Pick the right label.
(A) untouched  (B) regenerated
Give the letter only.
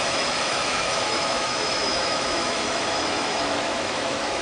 B